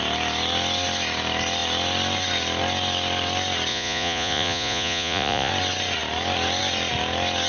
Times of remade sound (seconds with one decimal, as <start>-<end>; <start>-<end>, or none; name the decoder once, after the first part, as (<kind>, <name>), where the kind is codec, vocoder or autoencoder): 3.7-5.5 (vocoder, Vocos)